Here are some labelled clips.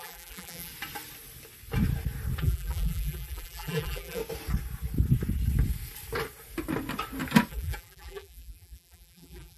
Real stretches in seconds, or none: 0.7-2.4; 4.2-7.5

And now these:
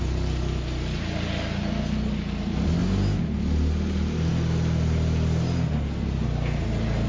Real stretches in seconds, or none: 0.0-7.1

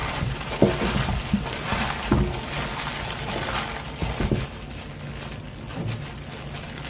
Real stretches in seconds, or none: 0.5-6.9

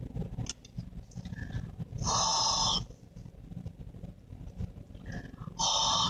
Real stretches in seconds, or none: 0.0-6.1